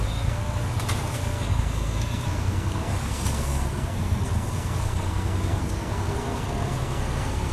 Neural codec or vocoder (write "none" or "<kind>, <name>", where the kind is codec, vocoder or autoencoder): codec, SNAC